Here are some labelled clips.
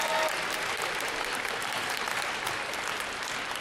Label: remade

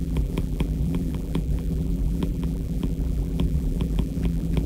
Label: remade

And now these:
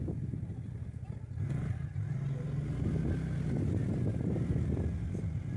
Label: recorded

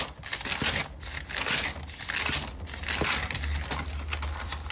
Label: recorded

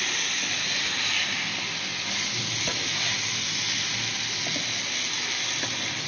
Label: recorded